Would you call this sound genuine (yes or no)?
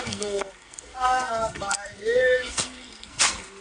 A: no